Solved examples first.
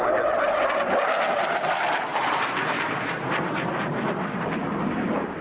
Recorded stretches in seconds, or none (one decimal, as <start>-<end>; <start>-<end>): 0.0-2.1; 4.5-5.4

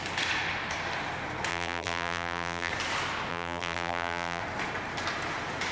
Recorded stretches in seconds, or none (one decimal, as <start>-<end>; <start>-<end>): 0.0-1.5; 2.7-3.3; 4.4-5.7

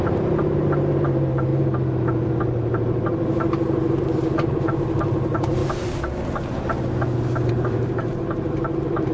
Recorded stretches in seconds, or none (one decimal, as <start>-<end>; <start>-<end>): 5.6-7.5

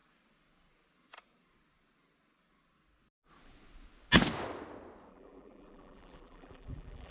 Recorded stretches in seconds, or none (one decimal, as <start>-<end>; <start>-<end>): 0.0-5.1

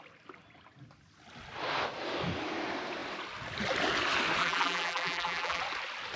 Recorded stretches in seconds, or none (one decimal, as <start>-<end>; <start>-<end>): 0.0-4.4; 5.6-6.2

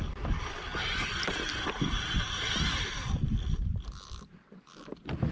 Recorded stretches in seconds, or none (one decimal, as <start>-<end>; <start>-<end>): 0.0-5.3

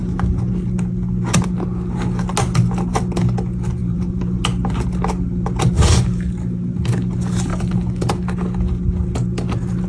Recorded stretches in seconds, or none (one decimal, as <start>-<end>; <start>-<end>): 0.0-3.8; 4.4-9.9

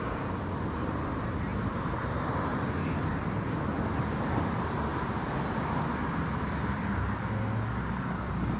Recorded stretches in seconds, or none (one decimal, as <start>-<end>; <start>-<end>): 0.0-1.5; 3.8-8.6